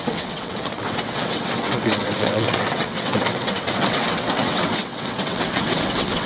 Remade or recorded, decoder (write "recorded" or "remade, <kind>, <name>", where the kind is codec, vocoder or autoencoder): remade, vocoder, WaveNeXt